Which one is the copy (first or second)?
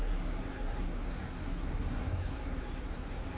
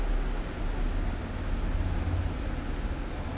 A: first